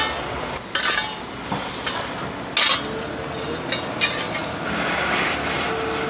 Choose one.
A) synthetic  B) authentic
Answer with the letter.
B